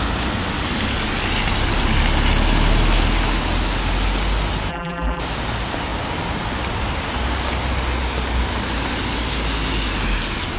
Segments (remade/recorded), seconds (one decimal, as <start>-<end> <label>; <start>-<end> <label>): 0.0-4.7 recorded; 4.7-5.2 remade; 5.2-10.6 recorded